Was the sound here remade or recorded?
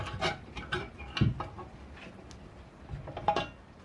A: recorded